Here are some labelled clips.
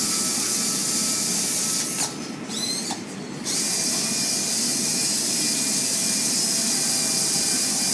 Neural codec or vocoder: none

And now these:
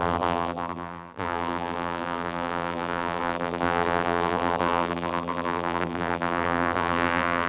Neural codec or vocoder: vocoder, BigVGAN v2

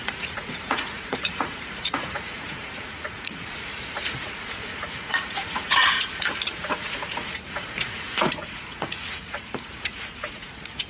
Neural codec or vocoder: vocoder, Vocos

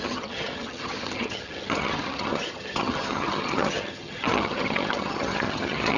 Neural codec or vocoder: vocoder, HiFi-GAN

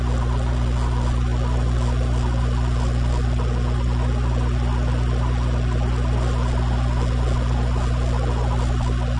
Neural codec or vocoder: none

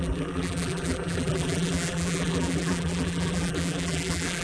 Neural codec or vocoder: vocoder, BigVGAN v2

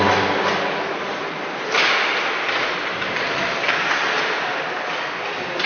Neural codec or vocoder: none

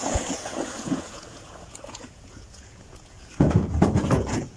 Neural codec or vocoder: vocoder, Vocos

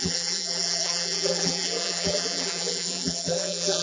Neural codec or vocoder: vocoder, BigVGAN v2